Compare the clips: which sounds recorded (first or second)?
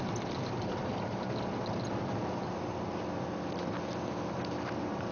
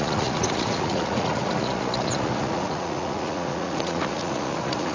first